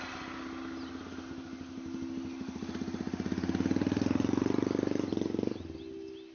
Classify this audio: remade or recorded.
recorded